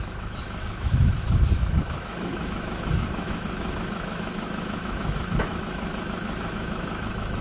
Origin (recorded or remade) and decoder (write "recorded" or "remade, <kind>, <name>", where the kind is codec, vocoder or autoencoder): remade, autoencoder, DAC-VAE